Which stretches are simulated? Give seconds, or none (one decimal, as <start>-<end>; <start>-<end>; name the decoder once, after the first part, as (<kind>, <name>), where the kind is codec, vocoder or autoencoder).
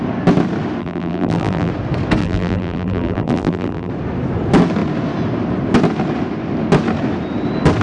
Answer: 0.8-1.7 (vocoder, BigVGAN v2); 2.2-3.9